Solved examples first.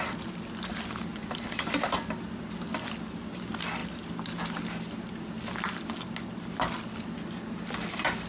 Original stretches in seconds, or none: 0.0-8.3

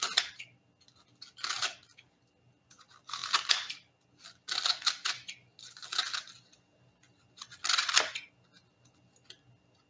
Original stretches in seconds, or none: 0.0-9.9

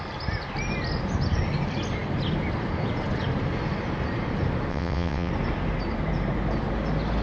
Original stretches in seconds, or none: 0.0-4.7; 5.3-7.2

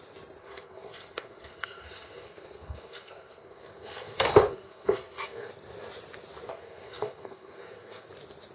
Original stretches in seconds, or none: 0.0-0.4; 5.5-6.5; 8.1-8.5

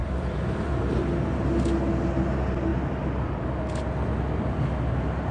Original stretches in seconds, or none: 0.7-2.7; 3.6-5.3

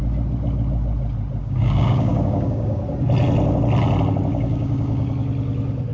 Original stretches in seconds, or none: 0.0-1.4; 2.8-4.3; 5.1-5.9